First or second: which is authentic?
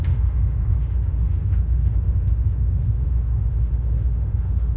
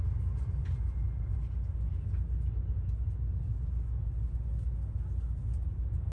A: second